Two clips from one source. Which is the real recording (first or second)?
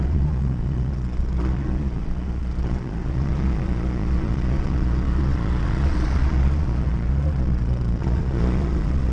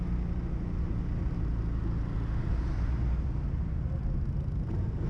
second